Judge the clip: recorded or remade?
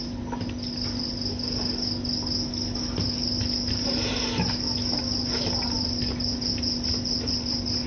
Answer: recorded